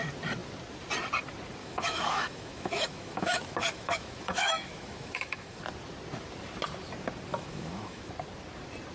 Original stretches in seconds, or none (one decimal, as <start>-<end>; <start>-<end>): 0.0-1.6; 5.6-7.3; 8.1-8.9